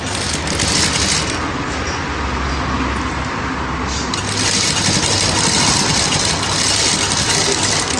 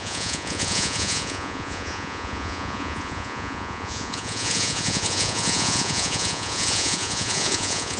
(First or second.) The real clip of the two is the first